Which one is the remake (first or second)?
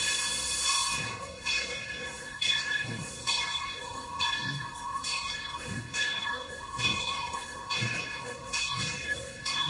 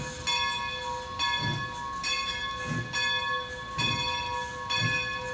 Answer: first